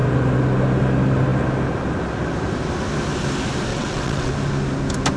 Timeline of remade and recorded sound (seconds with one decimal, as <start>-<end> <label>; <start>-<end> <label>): 0.0-3.7 recorded; 3.7-4.3 remade; 4.3-5.2 recorded